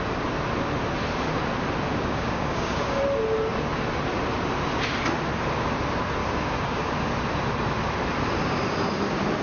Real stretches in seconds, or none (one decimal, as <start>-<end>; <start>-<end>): 0.0-1.9; 3.0-6.2; 7.1-9.4